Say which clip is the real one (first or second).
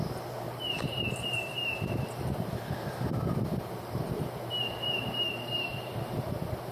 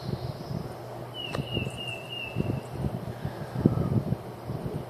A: second